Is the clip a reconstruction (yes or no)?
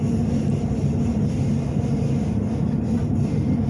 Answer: no